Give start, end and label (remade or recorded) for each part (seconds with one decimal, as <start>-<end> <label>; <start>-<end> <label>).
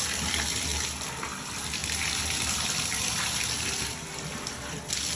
0.0-5.2 recorded